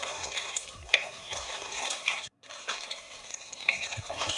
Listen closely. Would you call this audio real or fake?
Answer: fake